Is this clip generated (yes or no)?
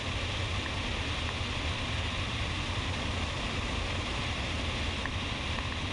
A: no